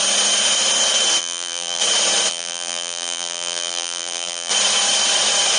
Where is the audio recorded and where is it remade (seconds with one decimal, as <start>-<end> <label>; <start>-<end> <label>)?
0.0-1.2 recorded; 1.2-1.8 remade; 1.8-2.3 recorded; 2.3-4.5 remade; 4.5-5.6 recorded